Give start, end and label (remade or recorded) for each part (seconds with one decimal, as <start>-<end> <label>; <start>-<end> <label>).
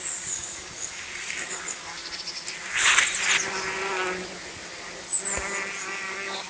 0.0-2.0 remade; 2.0-5.8 recorded; 5.8-6.5 remade